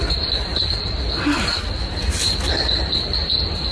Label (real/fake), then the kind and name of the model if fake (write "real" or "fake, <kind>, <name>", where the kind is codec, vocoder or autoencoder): real